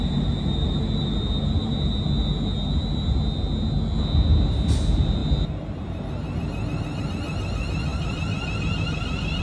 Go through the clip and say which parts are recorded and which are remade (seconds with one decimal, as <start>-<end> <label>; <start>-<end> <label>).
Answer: 0.0-9.4 recorded